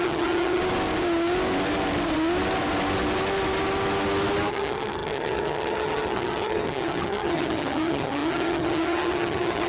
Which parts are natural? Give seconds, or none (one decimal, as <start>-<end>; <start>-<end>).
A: 0.6-4.5